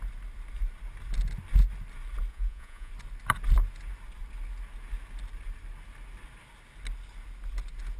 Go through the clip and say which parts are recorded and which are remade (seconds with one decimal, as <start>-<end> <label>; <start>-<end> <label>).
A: 0.0-2.3 recorded; 2.3-2.9 remade; 2.9-8.0 recorded